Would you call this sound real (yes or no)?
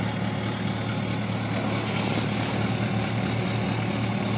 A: yes